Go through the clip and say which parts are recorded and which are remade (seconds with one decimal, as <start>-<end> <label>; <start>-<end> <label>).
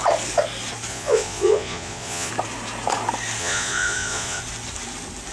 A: 0.0-0.9 recorded; 0.9-2.3 remade; 2.3-3.4 recorded; 3.4-4.4 remade; 4.4-5.3 recorded